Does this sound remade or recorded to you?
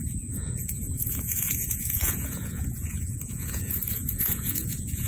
remade